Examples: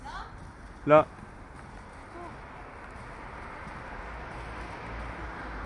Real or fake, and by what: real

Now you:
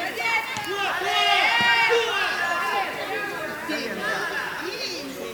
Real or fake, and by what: real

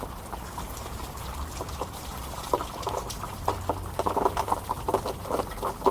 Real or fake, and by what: fake, vocoder, BigVGAN v2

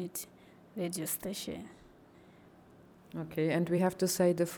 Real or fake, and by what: fake, vocoder, BigVGAN v2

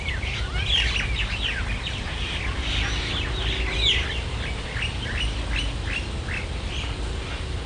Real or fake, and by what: real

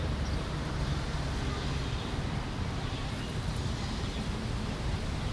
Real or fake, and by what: real